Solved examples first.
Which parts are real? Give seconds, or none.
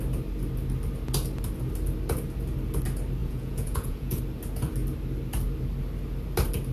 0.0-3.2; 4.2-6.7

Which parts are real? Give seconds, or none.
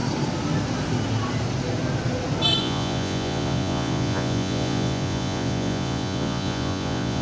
0.0-2.6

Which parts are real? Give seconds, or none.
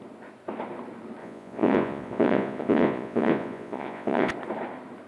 0.0-1.2; 4.3-5.1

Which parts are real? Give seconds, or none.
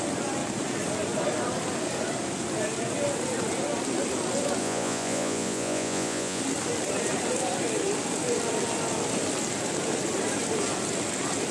0.0-4.6; 6.4-11.5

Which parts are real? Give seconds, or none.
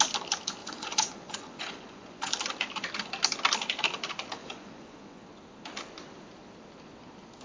0.0-0.6; 2.3-4.4; 5.2-7.4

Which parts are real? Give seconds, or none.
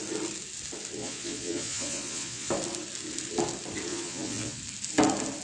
0.0-1.0; 2.5-3.9; 4.6-5.4